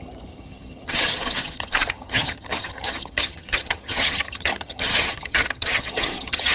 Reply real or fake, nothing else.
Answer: fake